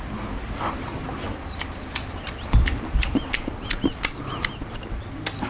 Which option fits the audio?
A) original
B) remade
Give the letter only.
A